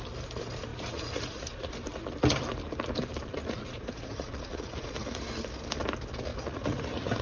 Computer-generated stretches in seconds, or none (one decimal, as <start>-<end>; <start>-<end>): 0.7-1.7; 3.3-4.9; 6.3-7.2

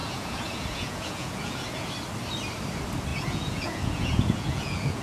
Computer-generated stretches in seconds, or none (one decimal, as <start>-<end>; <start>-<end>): 0.0-1.9; 3.1-5.0